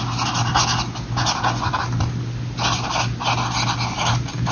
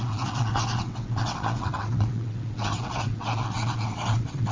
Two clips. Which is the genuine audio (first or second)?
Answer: first